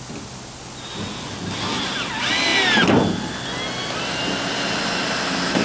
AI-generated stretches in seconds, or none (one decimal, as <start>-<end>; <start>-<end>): none